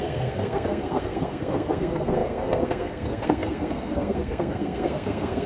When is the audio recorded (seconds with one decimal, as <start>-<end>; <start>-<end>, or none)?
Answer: none